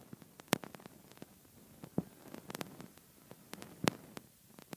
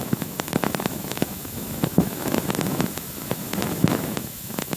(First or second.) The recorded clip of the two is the first